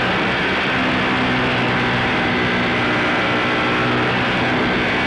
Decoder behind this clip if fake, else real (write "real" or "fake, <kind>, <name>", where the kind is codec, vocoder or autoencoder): real